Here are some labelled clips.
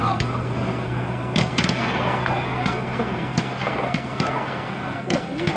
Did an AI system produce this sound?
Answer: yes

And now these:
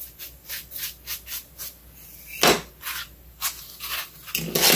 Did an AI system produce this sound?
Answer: no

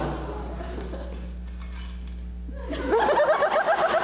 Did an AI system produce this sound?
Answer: no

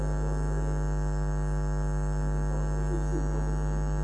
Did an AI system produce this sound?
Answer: no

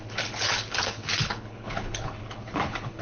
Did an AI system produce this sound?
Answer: yes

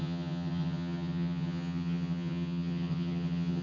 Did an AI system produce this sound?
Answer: yes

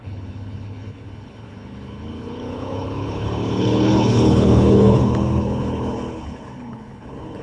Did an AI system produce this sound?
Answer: yes